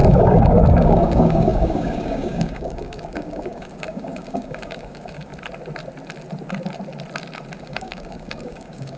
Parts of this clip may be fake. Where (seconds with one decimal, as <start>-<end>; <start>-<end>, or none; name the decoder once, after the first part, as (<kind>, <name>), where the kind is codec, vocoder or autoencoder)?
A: 0.0-5.3 (codec, DAC); 7.6-9.0